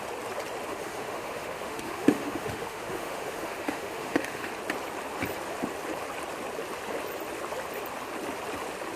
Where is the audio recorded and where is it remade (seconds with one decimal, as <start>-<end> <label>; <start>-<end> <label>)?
0.0-0.7 recorded; 0.7-4.5 remade; 4.5-9.0 recorded